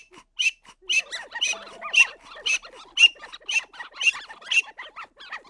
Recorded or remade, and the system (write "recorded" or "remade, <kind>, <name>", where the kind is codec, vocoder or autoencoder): recorded